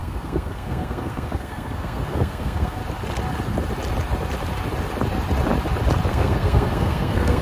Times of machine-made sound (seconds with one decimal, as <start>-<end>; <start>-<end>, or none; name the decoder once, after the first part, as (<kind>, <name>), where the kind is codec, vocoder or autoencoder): 0.0-2.8 (codec, SNAC); 6.1-7.4